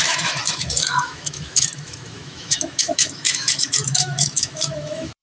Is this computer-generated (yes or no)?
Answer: yes